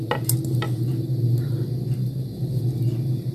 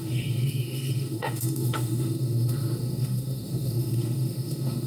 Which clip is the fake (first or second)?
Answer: second